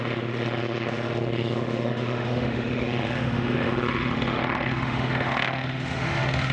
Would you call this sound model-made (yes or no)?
yes